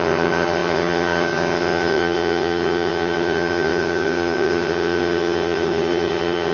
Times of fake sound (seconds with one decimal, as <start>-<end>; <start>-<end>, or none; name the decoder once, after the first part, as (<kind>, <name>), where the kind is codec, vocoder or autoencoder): 0.0-6.5 (vocoder, HiFi-GAN)